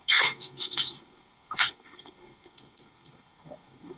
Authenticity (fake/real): fake